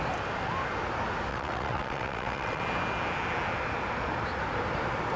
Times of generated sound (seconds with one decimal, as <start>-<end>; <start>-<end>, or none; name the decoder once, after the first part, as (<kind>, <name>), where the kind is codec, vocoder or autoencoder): 1.3-2.6 (vocoder, WaveNeXt)